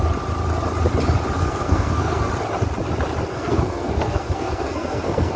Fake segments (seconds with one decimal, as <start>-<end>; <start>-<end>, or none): 1.4-2.3; 3.3-5.4